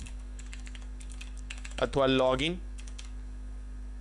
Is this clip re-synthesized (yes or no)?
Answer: yes